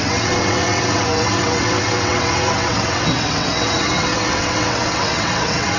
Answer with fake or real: fake